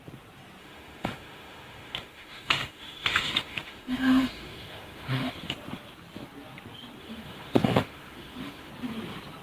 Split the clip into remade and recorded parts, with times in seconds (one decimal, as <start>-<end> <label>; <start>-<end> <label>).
0.0-0.6 recorded; 0.6-5.5 remade; 5.5-7.0 recorded; 7.0-8.7 remade; 8.7-9.4 recorded